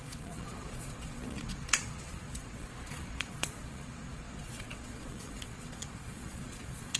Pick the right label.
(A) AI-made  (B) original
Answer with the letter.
A